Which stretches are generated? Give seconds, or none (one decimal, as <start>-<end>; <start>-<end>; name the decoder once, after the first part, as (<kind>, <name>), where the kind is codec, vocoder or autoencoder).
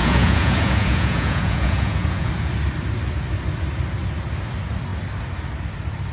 0.0-2.3 (vocoder, Vocos)